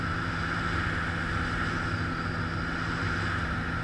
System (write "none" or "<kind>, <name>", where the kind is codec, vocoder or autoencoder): none